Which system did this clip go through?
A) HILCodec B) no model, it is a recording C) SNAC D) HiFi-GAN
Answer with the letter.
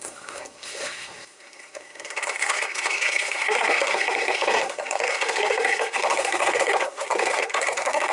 C